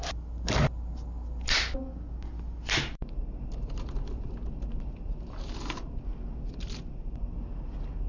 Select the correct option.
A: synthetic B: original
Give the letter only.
B